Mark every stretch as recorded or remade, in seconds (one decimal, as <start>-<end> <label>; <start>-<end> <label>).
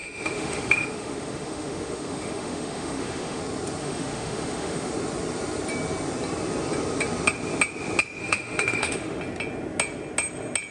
0.0-3.4 remade; 3.4-3.8 recorded; 3.8-4.9 remade; 4.9-8.2 recorded; 8.2-9.2 remade; 9.2-10.7 recorded